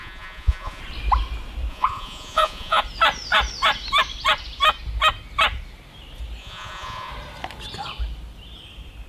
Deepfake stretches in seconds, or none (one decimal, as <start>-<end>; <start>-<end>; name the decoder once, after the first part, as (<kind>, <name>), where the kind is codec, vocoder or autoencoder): 0.0-0.8 (vocoder, Vocos); 1.7-2.8; 6.4-7.1

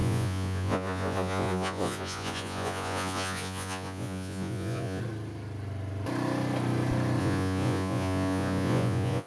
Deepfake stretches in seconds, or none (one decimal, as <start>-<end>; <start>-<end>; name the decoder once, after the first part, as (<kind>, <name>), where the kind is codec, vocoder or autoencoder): 0.0-5.0 (vocoder, Vocos); 7.2-9.3

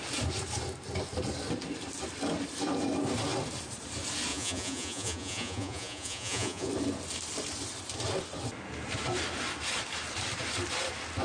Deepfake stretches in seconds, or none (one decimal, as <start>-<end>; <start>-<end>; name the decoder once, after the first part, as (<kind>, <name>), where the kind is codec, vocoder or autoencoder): 4.3-6.7 (vocoder, Vocos)

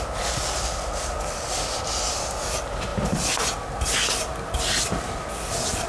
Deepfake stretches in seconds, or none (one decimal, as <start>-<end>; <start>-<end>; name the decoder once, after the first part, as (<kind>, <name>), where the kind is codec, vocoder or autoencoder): none

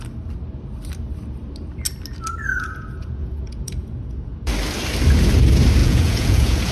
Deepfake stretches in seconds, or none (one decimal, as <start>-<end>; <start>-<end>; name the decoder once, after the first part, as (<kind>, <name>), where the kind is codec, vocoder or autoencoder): 2.5-4.5 (vocoder, Vocos); 5.8-6.7

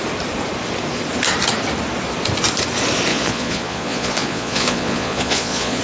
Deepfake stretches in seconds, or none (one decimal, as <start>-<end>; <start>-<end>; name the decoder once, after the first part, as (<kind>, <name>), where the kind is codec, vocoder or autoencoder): 3.1-5.8 (vocoder, Vocos)